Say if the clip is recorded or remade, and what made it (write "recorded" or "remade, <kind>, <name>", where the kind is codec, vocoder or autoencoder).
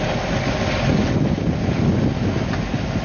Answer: recorded